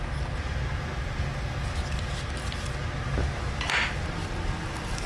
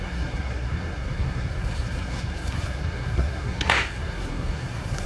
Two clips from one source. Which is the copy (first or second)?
second